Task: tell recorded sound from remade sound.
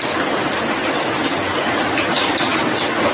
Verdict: recorded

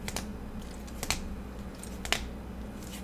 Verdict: recorded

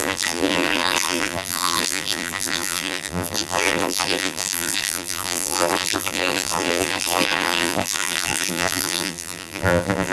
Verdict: remade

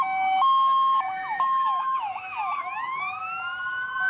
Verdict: remade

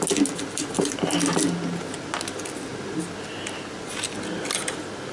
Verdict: recorded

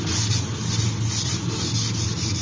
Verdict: recorded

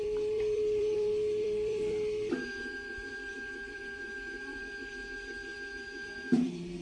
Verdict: remade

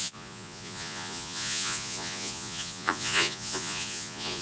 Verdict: remade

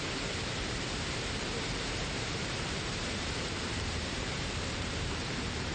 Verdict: remade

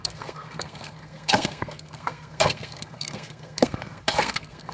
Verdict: remade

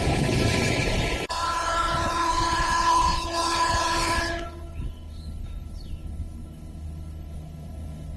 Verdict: remade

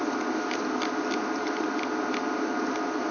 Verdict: recorded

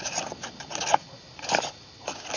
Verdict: recorded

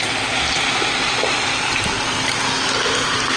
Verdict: recorded